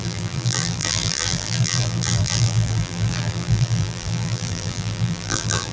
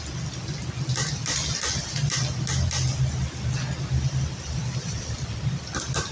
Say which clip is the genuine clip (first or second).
second